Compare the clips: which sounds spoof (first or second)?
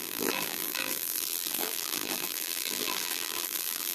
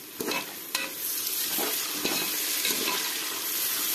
first